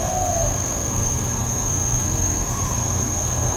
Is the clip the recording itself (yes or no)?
no